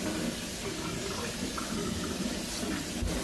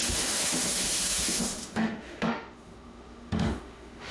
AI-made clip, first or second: second